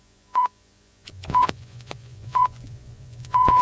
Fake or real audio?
fake